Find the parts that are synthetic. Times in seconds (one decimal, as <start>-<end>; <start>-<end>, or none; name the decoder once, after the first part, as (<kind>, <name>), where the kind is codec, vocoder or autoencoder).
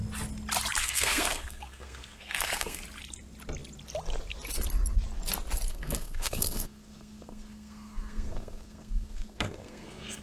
0.8-2.8 (codec, SNAC); 5.7-10.2